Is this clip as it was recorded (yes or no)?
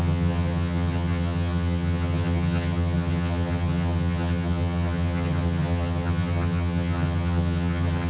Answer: no